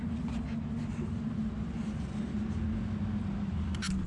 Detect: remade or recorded recorded